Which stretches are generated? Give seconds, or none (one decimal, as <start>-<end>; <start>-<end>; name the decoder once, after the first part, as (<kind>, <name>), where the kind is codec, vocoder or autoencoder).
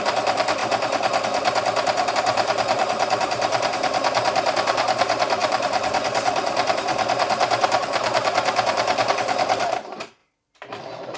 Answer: 0.0-0.6 (vocoder, BigVGAN v2); 2.1-10.2